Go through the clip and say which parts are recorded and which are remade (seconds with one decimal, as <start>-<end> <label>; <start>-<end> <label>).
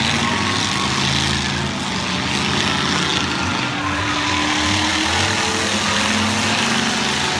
0.0-7.4 recorded